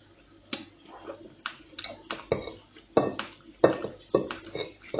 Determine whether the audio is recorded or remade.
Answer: recorded